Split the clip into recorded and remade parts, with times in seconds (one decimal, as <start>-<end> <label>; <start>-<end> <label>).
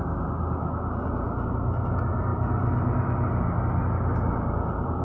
0.0-5.0 recorded